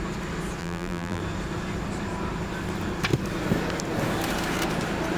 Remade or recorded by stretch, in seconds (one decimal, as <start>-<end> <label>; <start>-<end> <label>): 0.0-0.6 recorded; 0.6-1.2 remade; 1.2-5.2 recorded

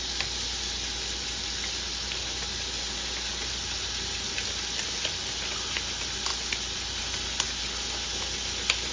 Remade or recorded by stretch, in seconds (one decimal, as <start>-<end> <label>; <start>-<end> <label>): 0.0-6.3 recorded; 6.3-7.0 remade; 7.0-8.9 recorded

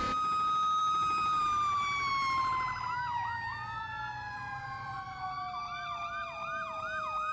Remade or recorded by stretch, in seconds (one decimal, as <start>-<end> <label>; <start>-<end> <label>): 0.0-0.8 recorded; 0.8-2.4 remade; 2.4-7.3 recorded

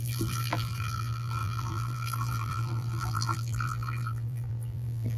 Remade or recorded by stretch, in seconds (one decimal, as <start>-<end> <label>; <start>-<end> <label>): 0.0-5.2 remade

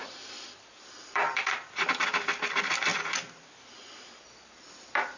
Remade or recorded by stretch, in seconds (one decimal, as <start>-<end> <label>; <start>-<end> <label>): 0.0-2.9 remade; 2.9-4.0 recorded; 4.0-5.2 remade

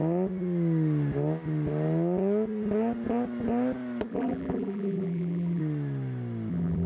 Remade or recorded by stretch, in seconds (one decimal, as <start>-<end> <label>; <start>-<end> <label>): 0.0-4.1 recorded; 4.1-5.6 remade; 5.6-6.5 recorded; 6.5-6.9 remade

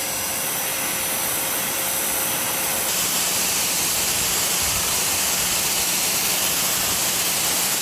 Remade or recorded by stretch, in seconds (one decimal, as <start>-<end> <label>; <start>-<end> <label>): 0.0-7.0 recorded; 7.0-7.8 remade

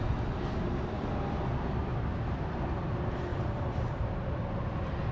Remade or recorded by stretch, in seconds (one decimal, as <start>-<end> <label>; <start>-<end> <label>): 0.0-3.3 recorded; 3.3-4.2 remade; 4.2-5.1 recorded